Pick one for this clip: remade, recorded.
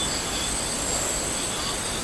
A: recorded